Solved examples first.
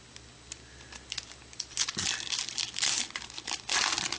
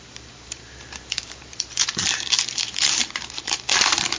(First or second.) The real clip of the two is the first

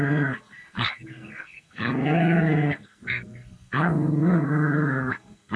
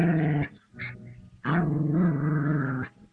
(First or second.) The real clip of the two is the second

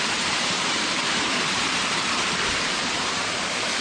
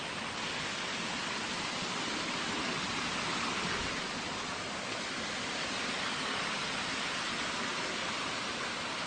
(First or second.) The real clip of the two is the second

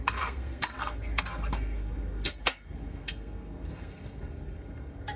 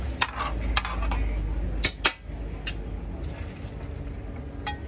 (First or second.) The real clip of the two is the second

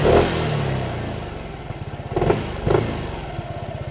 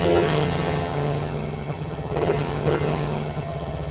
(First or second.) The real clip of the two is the first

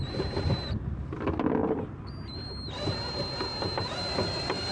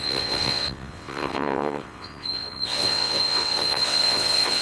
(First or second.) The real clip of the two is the first